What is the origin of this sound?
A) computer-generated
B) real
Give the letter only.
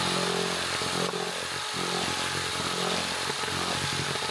B